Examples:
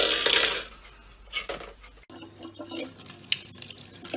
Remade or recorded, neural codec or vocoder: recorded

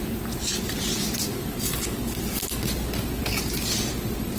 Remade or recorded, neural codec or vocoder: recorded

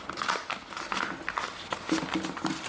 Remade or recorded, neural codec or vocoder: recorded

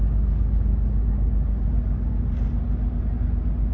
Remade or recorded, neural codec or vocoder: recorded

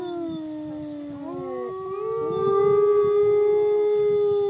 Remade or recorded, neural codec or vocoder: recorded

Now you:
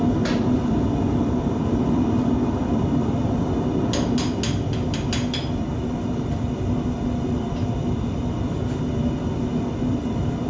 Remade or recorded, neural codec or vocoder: recorded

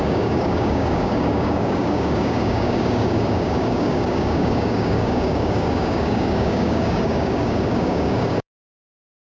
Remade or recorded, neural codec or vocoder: remade, codec, DAC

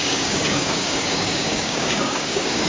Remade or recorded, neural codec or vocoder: remade, codec, DAC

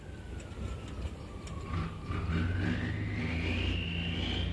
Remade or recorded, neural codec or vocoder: recorded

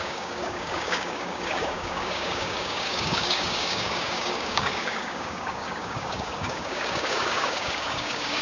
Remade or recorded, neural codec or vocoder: remade, codec, DAC